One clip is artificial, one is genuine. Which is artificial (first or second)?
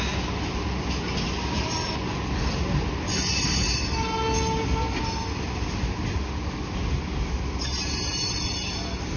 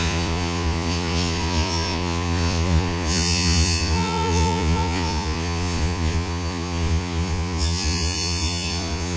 second